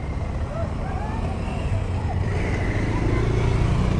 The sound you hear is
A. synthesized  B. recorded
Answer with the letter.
B